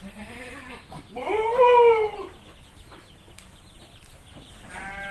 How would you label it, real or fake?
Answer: real